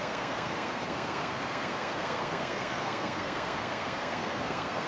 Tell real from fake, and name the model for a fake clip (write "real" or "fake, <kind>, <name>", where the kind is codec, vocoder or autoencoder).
fake, codec, SNAC